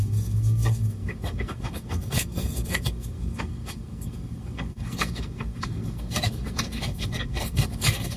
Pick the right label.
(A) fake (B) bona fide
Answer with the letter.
A